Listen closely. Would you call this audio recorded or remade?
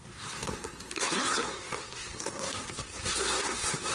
remade